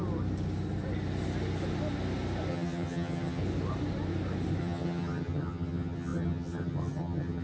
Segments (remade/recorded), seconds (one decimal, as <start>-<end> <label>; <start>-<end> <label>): 0.0-2.5 recorded; 2.5-3.4 remade; 3.4-4.6 recorded; 4.6-7.4 remade